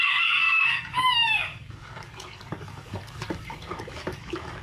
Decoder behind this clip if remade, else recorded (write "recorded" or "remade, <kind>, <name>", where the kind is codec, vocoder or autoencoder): remade, codec, DAC